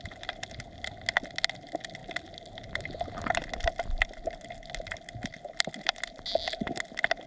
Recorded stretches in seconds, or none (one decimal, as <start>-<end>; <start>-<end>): 0.0-7.3